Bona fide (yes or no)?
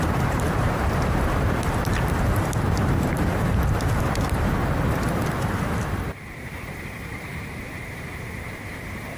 no